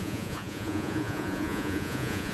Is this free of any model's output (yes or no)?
no